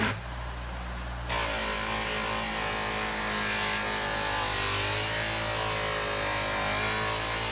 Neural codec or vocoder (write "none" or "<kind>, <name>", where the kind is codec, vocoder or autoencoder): none